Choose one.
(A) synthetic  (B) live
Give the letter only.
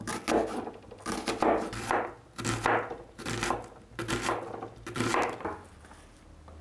B